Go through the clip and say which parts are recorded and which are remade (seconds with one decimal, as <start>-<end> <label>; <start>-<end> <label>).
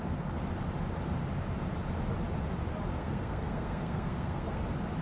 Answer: 0.0-2.9 recorded; 2.9-4.6 remade; 4.6-5.0 recorded